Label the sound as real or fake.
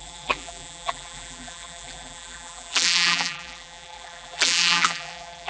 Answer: fake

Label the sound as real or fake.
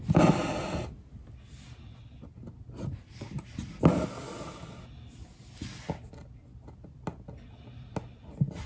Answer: real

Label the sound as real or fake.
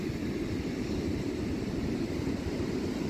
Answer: real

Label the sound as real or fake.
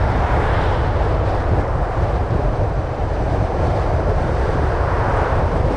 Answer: fake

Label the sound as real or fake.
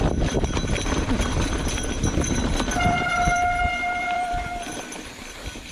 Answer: fake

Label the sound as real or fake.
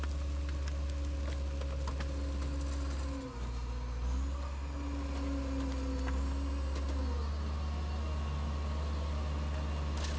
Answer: real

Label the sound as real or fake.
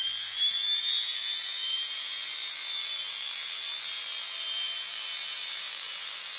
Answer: fake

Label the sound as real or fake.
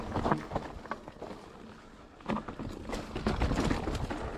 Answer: real